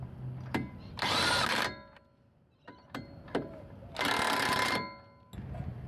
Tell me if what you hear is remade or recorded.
recorded